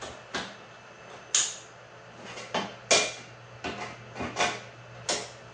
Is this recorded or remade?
recorded